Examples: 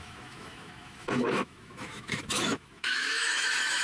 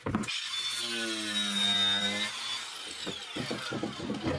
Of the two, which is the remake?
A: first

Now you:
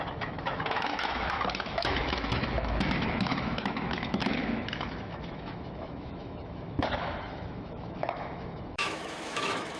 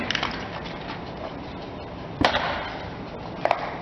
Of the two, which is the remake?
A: first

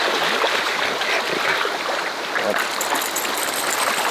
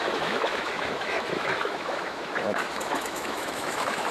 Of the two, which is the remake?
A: second